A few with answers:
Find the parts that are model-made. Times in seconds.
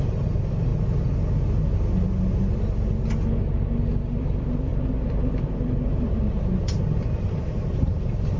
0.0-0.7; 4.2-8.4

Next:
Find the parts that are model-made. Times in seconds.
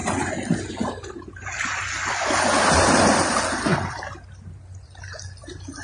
none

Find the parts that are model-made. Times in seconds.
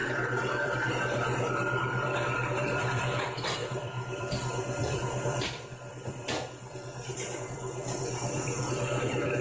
0.0-9.4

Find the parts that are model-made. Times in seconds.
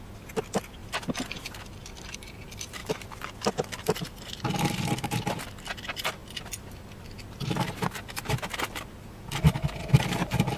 0.8-2.1; 2.8-3.4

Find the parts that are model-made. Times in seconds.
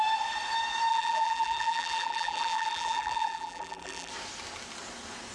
0.9-4.1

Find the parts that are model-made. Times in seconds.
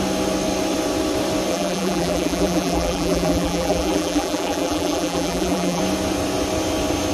1.5-5.8